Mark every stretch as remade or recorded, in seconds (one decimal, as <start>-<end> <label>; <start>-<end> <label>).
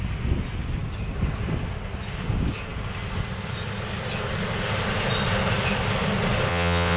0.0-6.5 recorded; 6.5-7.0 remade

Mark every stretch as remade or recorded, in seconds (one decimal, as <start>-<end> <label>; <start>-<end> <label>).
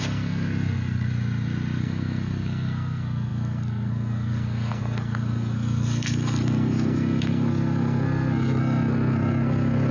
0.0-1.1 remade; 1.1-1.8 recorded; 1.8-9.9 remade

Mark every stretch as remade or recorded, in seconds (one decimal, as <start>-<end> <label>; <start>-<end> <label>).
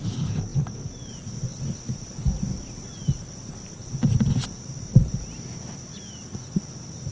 0.0-5.9 recorded; 5.9-6.5 remade; 6.5-7.1 recorded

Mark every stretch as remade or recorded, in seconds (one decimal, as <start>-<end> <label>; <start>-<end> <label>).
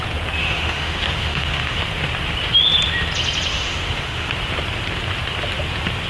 0.0-0.4 recorded; 0.4-1.8 remade; 1.8-3.5 recorded; 3.5-4.3 remade; 4.3-6.1 recorded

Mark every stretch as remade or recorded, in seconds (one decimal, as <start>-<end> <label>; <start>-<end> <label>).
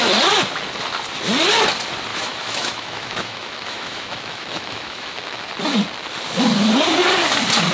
0.0-2.1 recorded; 2.1-5.5 remade; 5.5-7.7 recorded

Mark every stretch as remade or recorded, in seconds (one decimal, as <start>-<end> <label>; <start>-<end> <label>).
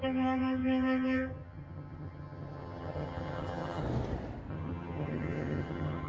0.0-3.8 remade; 3.8-4.5 recorded; 4.5-6.1 remade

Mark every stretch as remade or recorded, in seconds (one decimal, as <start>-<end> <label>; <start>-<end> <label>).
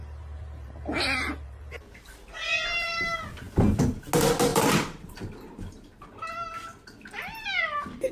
0.0-4.5 recorded; 4.5-6.1 remade; 6.1-8.1 recorded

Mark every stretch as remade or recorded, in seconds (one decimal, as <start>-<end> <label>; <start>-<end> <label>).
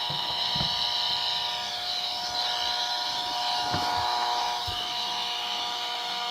0.0-0.5 remade; 0.5-1.7 recorded; 1.7-2.2 remade; 2.2-2.7 recorded; 2.7-6.3 remade